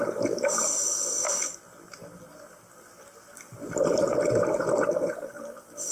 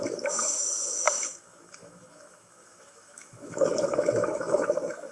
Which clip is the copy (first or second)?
second